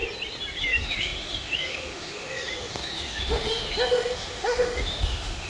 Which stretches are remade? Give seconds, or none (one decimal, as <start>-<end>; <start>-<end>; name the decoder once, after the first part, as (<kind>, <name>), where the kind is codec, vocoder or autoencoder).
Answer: 0.6-5.5 (autoencoder, DAC-VAE)

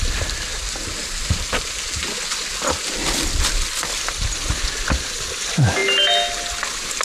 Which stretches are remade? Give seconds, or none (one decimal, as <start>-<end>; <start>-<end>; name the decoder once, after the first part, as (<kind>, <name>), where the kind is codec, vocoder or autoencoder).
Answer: none

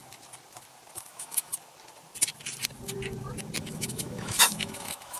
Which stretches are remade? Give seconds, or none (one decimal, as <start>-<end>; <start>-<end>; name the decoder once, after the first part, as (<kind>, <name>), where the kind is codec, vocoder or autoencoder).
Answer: 1.1-1.5 (autoencoder, DAC-VAE); 3.6-5.2

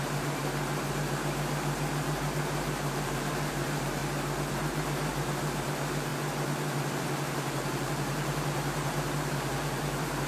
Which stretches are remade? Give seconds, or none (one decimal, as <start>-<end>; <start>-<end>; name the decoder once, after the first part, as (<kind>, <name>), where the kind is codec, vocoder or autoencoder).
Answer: 0.0-0.4 (vocoder, BigVGAN v2); 2.0-4.0; 4.5-6.1; 6.9-10.3

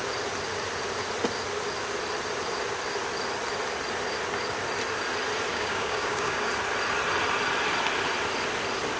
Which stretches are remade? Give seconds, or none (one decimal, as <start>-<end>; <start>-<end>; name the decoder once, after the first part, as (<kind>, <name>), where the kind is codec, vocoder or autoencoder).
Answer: 5.5-6.5 (codec, DAC)

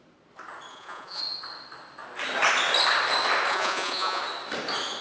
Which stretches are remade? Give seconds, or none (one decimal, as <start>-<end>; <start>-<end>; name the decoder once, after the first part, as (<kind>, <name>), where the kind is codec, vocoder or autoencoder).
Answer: 0.7-1.2 (vocoder, Vocos); 3.5-4.2